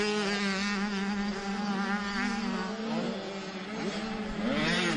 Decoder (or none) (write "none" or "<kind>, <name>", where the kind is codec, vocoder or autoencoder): none